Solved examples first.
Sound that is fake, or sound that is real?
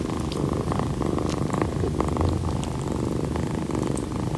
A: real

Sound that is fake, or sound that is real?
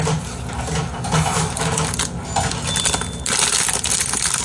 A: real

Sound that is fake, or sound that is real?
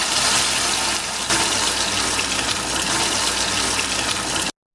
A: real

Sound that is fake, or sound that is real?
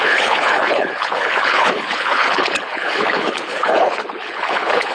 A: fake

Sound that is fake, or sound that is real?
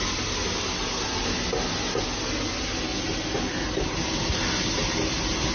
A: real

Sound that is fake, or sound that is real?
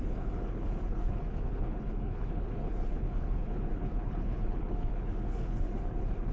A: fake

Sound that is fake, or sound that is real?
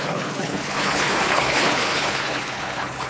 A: fake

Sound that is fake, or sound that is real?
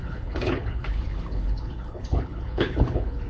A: fake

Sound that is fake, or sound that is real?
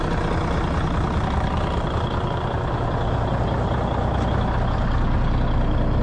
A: real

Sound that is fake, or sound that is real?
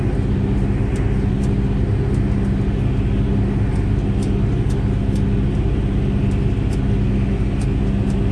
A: real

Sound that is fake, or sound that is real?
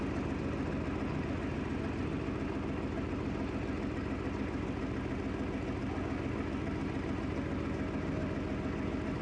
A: real